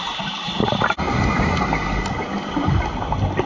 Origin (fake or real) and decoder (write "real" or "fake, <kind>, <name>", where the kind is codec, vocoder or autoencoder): real